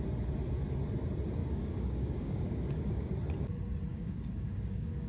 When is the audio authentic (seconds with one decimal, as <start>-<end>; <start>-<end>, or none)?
0.0-1.4; 3.1-3.9